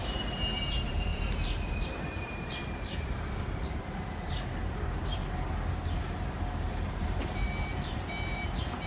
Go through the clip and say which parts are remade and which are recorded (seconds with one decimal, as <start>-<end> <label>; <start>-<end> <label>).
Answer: 0.0-5.2 remade; 5.2-5.7 recorded; 5.7-8.9 remade